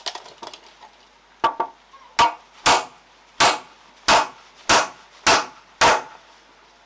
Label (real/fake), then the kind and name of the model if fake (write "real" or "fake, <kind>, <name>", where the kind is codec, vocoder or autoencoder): real